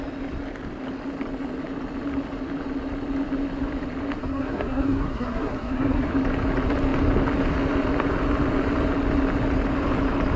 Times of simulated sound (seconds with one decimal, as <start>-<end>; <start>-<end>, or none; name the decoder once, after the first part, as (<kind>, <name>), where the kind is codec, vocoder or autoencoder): 4.2-6.1 (codec, SNAC)